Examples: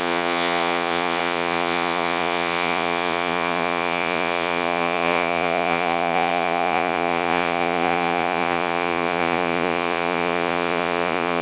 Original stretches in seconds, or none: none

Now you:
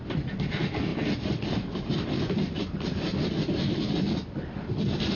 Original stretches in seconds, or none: none

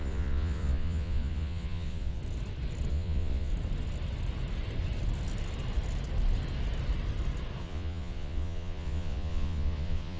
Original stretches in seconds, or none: 2.2-2.9; 3.5-7.6